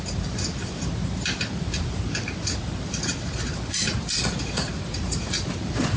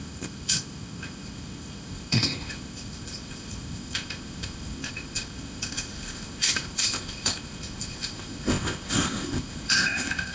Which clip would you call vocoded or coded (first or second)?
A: second